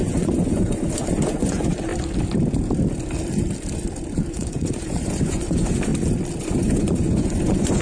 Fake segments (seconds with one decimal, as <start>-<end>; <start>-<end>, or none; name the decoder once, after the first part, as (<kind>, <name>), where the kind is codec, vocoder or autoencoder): 0.0-1.9 (vocoder, Vocos); 4.3-5.9; 6.4-7.8